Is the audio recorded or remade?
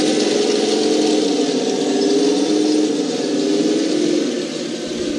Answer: recorded